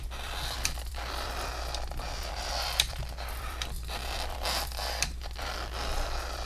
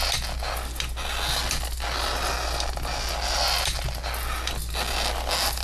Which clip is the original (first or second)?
second